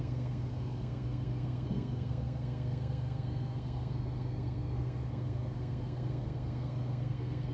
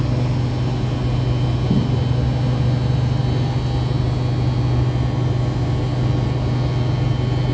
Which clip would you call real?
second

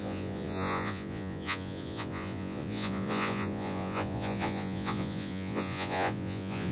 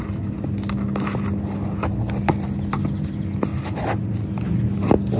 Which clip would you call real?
second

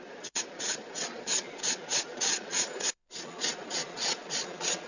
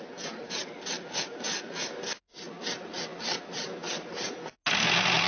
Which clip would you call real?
second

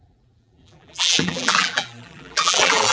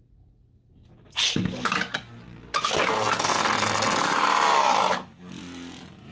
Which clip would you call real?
second